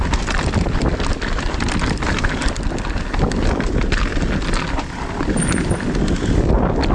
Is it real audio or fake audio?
real